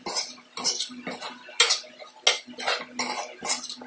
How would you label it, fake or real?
real